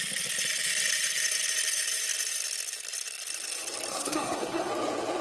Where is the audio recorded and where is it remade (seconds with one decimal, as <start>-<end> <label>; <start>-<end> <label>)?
0.0-3.9 recorded; 3.9-4.7 remade; 4.7-5.2 recorded